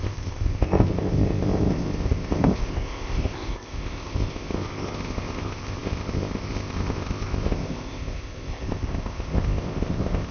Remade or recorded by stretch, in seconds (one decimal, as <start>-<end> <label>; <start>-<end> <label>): 0.0-10.3 remade